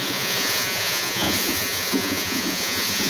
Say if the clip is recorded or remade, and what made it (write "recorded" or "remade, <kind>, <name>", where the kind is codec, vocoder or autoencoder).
remade, vocoder, Vocos